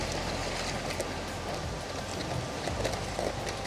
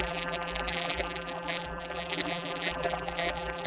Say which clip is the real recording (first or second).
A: first